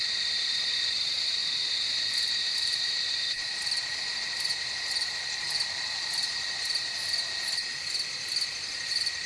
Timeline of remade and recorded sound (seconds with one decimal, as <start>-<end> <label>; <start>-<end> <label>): 0.0-1.4 remade; 1.4-2.3 recorded; 2.3-3.6 remade; 3.6-8.7 recorded; 8.7-9.3 remade